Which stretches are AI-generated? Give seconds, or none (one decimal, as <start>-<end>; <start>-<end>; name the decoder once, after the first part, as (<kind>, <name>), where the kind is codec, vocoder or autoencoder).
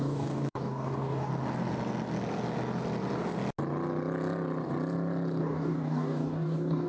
0.0-1.3 (codec, DAC); 5.4-6.9